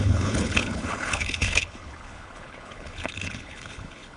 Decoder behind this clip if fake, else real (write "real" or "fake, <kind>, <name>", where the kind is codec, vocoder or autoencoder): fake, codec, HILCodec